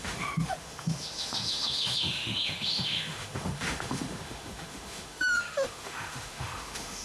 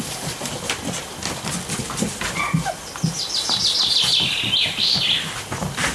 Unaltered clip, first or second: second